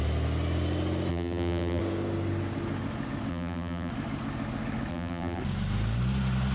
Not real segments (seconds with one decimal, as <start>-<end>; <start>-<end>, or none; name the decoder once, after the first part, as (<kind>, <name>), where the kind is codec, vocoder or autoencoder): 1.1-1.8 (vocoder, BigVGAN v2); 3.3-3.9; 4.9-5.4